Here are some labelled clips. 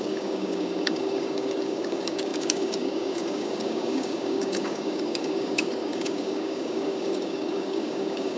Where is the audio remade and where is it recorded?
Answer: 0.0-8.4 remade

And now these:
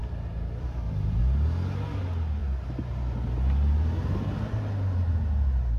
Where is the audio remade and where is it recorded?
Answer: 0.0-1.2 remade; 1.2-5.8 recorded

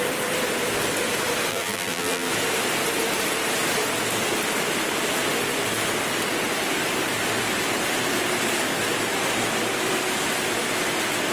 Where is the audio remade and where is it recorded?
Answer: 0.0-1.5 recorded; 1.5-2.3 remade; 2.3-11.3 recorded

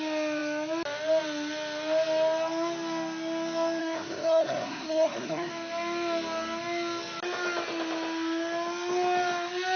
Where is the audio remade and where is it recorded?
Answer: 0.0-3.8 recorded; 3.8-5.5 remade; 5.5-9.8 recorded